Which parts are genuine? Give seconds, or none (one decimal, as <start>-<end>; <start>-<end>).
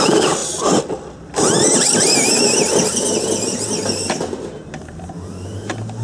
0.0-0.4; 3.0-6.0